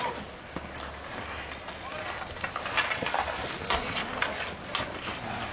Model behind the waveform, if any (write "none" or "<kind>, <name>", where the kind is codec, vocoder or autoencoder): none